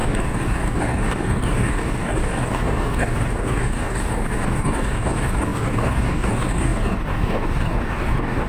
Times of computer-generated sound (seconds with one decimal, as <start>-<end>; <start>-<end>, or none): 0.0-8.5